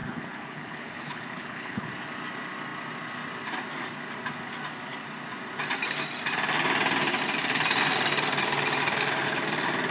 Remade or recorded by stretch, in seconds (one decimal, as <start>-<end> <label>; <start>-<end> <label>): 0.0-1.9 remade; 1.9-9.9 recorded